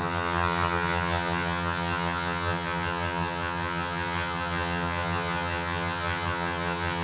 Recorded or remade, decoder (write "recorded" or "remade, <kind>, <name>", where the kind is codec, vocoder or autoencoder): remade, vocoder, HiFi-GAN